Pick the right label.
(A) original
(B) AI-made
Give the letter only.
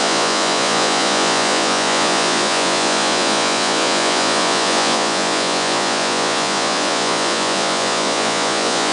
B